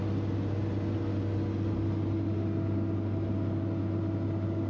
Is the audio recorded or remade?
recorded